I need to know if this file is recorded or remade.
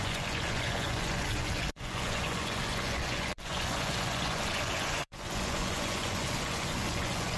remade